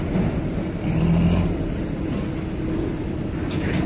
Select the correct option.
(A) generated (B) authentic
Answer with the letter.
B